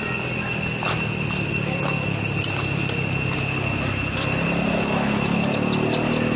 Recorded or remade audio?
recorded